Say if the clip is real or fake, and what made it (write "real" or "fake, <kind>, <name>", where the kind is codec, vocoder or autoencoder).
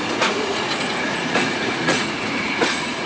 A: fake, vocoder, Vocos